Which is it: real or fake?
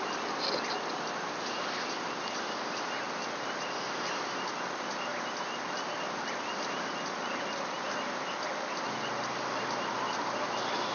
real